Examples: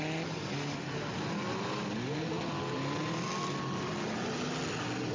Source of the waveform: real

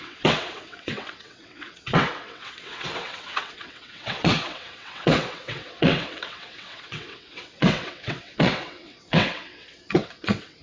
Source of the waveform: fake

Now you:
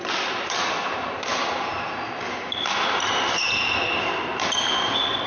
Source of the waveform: real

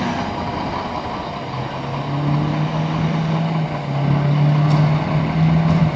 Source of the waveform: real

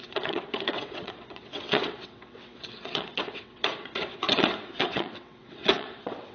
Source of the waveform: fake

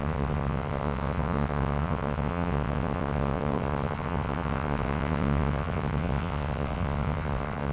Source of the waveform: fake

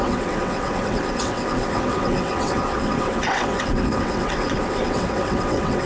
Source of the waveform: fake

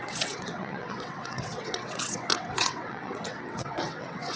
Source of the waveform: fake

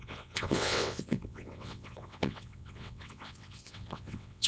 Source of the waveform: fake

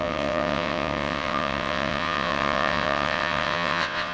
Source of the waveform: fake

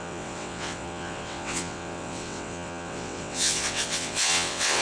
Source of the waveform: fake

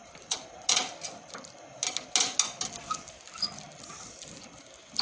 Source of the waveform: real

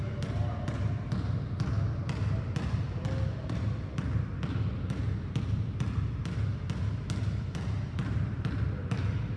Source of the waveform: real